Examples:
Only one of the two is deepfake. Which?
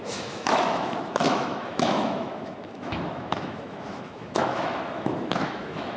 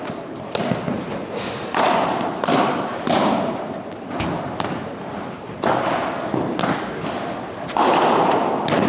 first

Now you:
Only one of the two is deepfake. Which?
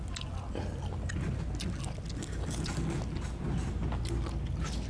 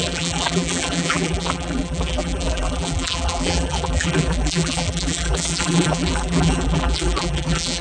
second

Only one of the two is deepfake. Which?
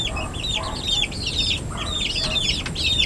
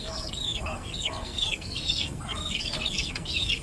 second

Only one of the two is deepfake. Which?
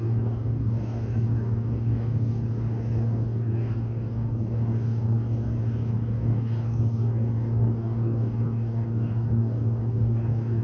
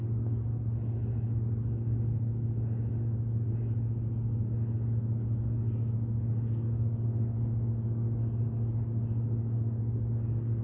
first